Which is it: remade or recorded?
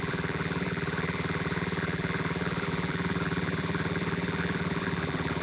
remade